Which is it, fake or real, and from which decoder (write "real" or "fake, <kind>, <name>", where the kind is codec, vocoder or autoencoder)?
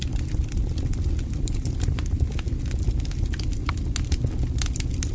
real